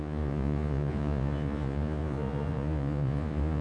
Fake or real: fake